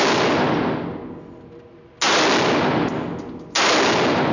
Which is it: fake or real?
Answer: real